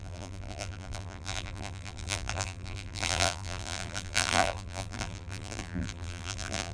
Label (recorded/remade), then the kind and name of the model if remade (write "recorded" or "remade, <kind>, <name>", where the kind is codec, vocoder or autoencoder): remade, vocoder, BigVGAN v2